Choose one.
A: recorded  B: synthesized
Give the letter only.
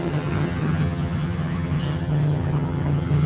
B